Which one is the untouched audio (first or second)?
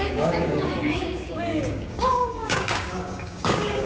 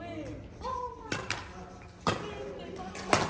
second